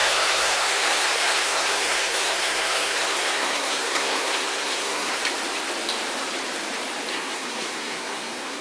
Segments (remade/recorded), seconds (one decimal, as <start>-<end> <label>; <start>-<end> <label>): 0.0-5.2 remade; 5.2-7.1 recorded; 7.1-8.6 remade

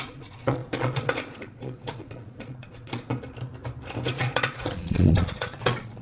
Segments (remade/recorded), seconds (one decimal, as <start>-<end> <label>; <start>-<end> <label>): 0.0-3.1 remade; 3.1-4.1 recorded; 4.1-6.0 remade

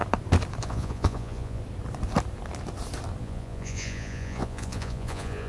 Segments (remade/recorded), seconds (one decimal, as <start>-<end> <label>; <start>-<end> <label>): 0.0-0.6 recorded; 0.6-1.6 remade; 1.6-3.2 recorded; 3.2-5.5 remade

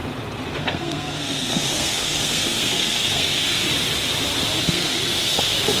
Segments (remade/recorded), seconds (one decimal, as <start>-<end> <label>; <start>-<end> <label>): 0.0-0.6 recorded; 0.6-3.6 remade; 3.6-4.6 recorded; 4.6-5.8 remade

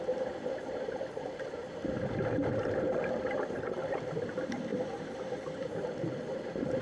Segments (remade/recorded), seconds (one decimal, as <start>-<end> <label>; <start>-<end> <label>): 0.0-1.6 remade; 1.6-3.1 recorded; 3.1-6.8 remade

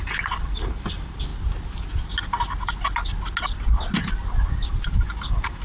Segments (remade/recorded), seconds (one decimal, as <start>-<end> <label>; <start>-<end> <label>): 0.0-1.3 remade; 1.3-4.7 recorded; 4.7-5.6 remade